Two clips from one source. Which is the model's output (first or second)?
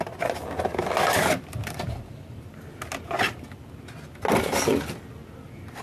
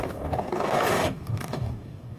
second